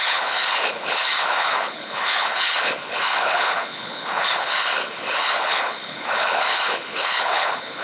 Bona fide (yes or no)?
no